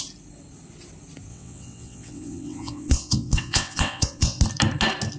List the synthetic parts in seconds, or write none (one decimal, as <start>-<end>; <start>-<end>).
1.3-4.4